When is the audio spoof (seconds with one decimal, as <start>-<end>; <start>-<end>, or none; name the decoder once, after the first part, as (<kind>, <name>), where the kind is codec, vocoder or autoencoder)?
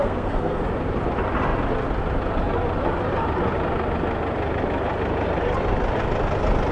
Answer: 0.0-0.6 (codec, SNAC)